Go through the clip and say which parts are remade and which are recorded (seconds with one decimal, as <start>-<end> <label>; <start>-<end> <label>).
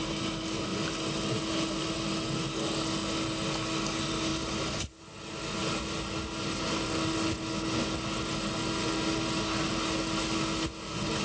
0.0-11.2 recorded